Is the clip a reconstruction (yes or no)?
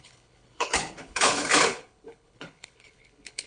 yes